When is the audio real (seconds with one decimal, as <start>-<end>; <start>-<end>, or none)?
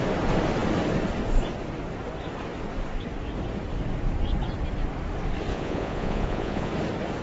0.0-5.5; 6.7-7.2